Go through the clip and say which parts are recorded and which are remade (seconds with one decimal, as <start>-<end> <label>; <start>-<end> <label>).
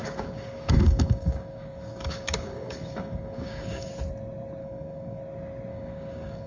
0.0-3.9 remade; 3.9-4.6 recorded; 4.6-5.2 remade; 5.2-5.7 recorded; 5.7-6.5 remade